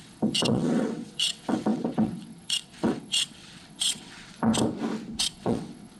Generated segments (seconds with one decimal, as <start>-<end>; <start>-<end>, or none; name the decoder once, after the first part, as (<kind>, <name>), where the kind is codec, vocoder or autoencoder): 0.0-4.5 (vocoder, WaveNeXt); 5.2-6.0